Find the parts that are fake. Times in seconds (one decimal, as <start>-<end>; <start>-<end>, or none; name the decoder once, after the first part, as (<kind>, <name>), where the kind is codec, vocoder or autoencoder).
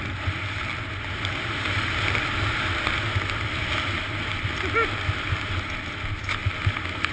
none